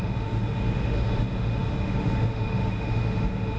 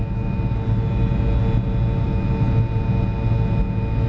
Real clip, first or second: second